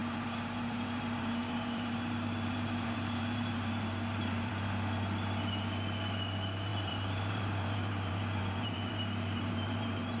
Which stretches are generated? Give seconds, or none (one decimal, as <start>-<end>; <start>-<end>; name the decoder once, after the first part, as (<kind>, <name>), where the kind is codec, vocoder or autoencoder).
0.0-4.5 (vocoder, BigVGAN v2); 6.7-10.2